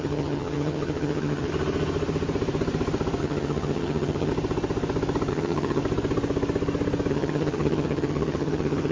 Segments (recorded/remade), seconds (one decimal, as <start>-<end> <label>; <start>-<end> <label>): 0.0-1.5 remade; 1.5-3.2 recorded; 3.2-4.3 remade; 4.3-5.3 recorded; 5.3-5.8 remade; 5.8-7.1 recorded; 7.1-8.9 remade